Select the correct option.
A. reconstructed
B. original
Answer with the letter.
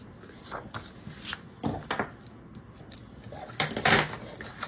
B